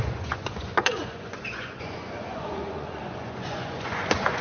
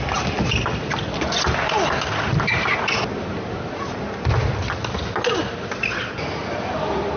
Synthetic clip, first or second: first